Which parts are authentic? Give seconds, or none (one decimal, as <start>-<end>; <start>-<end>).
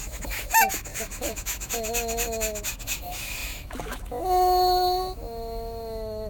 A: none